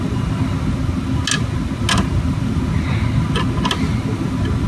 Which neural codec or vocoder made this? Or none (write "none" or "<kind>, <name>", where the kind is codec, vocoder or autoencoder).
none